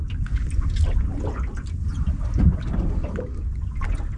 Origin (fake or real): real